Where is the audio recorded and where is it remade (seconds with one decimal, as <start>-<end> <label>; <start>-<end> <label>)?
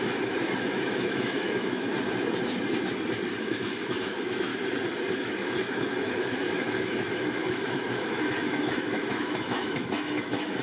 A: 0.0-1.9 remade; 1.9-3.4 recorded; 3.4-4.5 remade; 4.5-5.1 recorded; 5.1-10.6 remade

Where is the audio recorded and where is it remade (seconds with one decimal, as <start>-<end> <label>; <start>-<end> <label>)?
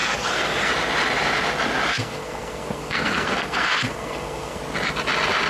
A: 0.0-0.7 remade; 0.7-1.9 recorded; 1.9-4.6 remade; 4.6-5.5 recorded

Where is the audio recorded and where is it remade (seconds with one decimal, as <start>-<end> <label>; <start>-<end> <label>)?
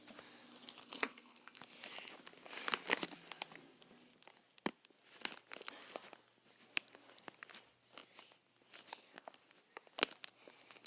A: 0.0-0.8 recorded; 0.8-1.6 remade; 1.6-10.9 recorded